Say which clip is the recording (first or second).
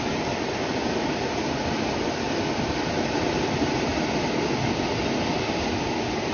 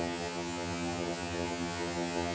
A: first